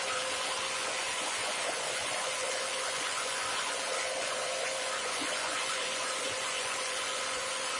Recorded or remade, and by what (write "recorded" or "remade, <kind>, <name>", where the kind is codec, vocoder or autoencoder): remade, vocoder, Vocos